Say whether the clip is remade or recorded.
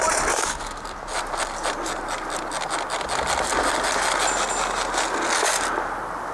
recorded